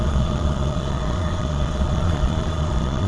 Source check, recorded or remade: remade